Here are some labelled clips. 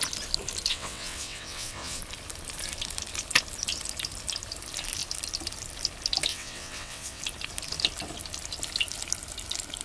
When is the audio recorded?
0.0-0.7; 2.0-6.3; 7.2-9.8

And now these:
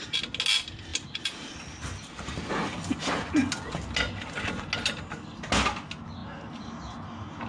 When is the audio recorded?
0.0-0.9; 2.5-7.5

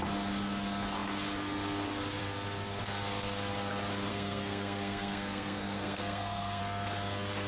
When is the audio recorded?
0.0-4.1; 6.6-7.5

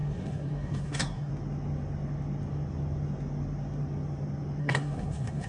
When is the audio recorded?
1.3-4.6

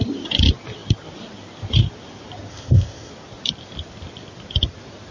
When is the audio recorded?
0.0-2.5; 3.1-5.1

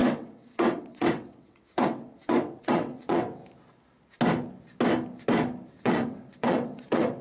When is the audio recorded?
3.4-5.7

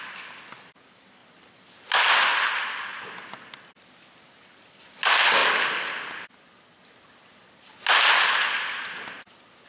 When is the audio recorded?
0.0-9.7